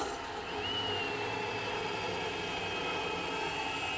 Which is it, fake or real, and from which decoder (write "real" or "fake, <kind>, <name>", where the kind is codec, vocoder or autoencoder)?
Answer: real